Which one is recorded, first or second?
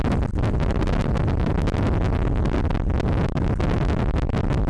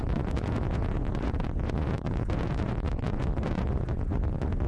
first